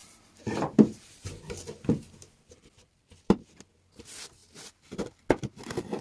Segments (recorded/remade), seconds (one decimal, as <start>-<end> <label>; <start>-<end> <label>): 0.0-3.6 remade; 3.6-6.0 recorded